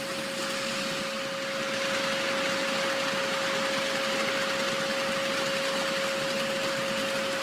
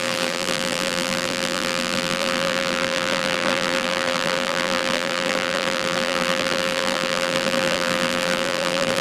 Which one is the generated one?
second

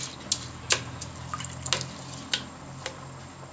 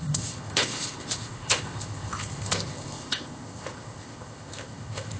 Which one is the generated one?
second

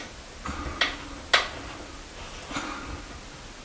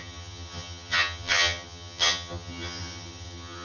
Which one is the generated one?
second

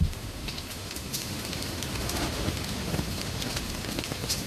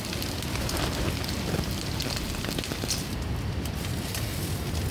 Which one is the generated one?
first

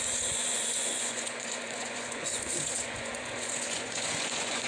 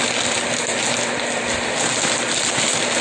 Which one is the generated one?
first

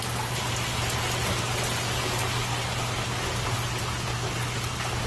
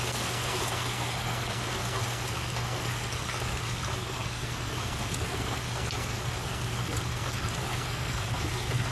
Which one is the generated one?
second